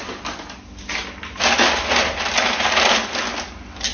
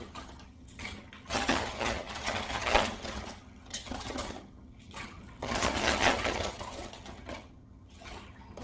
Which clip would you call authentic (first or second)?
first